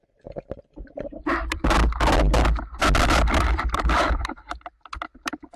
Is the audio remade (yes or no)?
no